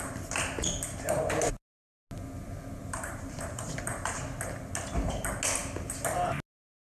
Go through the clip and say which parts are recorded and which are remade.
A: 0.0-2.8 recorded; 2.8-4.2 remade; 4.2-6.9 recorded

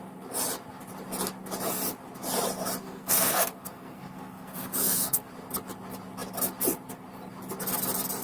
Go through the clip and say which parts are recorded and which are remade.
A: 0.0-2.8 recorded; 2.8-5.3 remade; 5.3-8.2 recorded

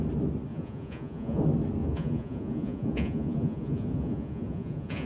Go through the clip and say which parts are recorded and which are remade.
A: 0.0-0.5 recorded; 0.5-1.4 remade; 1.4-1.8 recorded; 1.8-5.1 remade

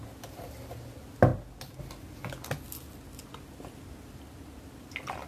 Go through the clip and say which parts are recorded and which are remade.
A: 0.0-5.3 recorded

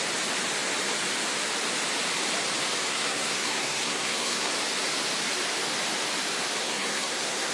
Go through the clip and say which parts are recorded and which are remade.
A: 0.0-2.9 recorded; 2.9-4.5 remade; 4.5-6.6 recorded; 6.6-7.5 remade

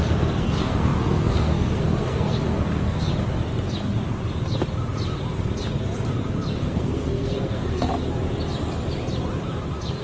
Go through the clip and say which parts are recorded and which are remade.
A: 0.0-3.1 remade; 3.1-6.6 recorded; 6.6-7.9 remade; 7.9-10.0 recorded

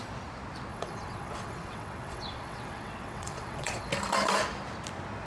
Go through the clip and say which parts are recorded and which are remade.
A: 0.0-0.7 recorded; 0.7-3.9 remade; 3.9-5.3 recorded